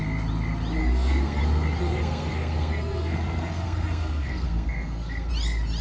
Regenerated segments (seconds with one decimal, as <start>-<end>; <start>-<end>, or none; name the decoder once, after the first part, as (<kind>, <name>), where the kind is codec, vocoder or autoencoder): 0.8-1.4 (codec, SNAC); 1.8-5.3